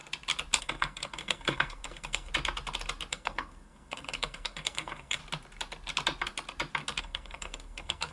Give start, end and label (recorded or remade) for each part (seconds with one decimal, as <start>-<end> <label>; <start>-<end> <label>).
0.0-0.6 recorded; 0.6-2.3 remade; 2.3-3.1 recorded; 3.1-5.2 remade; 5.2-7.0 recorded; 7.0-8.1 remade